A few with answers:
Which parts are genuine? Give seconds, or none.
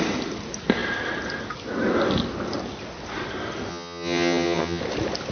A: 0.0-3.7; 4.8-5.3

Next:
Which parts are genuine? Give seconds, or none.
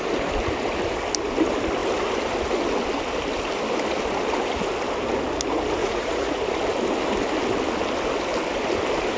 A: 0.0-5.8; 6.4-9.2